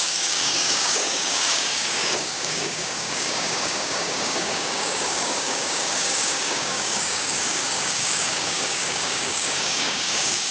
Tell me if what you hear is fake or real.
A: fake